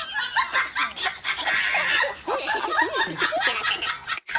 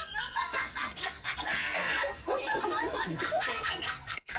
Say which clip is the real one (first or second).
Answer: first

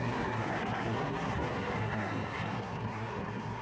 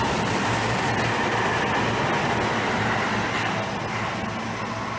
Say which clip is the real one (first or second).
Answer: second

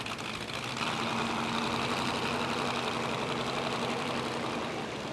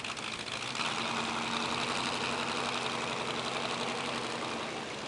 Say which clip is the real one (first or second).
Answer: second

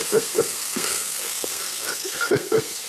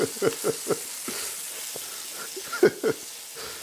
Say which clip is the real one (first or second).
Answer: second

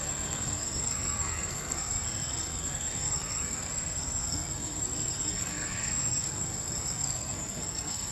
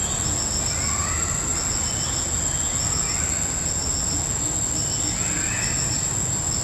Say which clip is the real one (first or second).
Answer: second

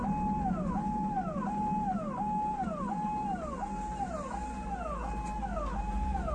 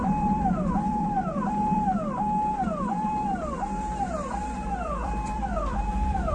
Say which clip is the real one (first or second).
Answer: first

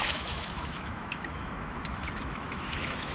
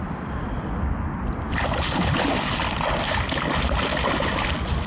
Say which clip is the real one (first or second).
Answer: second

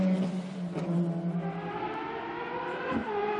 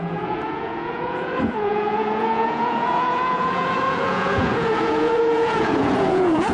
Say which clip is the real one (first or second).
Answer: first